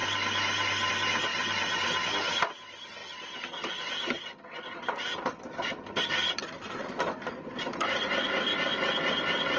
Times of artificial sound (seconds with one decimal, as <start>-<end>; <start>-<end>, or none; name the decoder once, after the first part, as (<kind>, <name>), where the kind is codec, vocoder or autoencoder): none